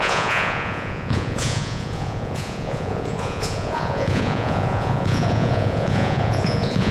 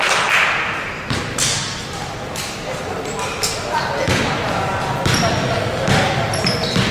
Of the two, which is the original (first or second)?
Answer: second